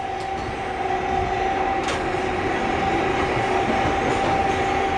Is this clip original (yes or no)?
yes